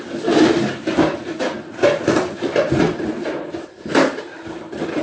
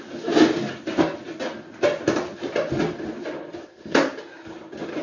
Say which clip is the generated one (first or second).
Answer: first